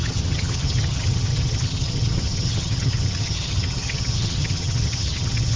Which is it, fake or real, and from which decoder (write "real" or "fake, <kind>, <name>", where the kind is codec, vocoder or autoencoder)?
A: fake, vocoder, HiFi-GAN